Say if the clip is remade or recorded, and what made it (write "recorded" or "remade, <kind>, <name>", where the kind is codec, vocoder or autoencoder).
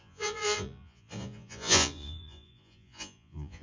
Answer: remade, vocoder, Vocos